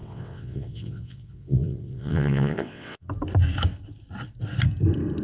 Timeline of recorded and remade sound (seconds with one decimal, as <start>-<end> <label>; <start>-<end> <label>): 0.0-3.1 remade; 3.1-5.2 recorded